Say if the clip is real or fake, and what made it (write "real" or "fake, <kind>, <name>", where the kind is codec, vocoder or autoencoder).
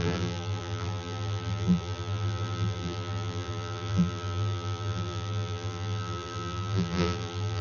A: fake, vocoder, BigVGAN v2